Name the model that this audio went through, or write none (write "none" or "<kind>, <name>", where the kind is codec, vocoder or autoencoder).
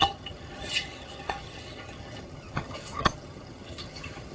vocoder, HiFi-GAN